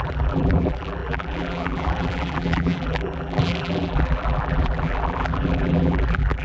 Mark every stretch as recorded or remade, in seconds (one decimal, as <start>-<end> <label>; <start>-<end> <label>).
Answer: 0.0-6.4 remade